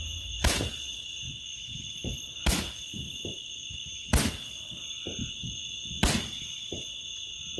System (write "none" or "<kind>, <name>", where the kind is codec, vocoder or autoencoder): none